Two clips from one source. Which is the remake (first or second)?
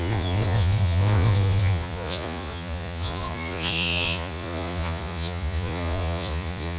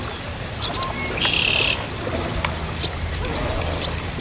first